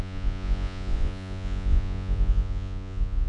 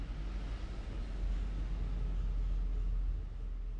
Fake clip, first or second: first